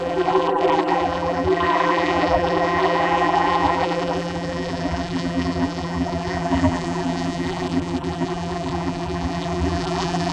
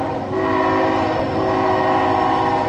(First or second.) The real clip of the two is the second